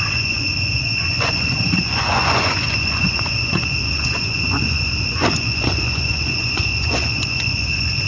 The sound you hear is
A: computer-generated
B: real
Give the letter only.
A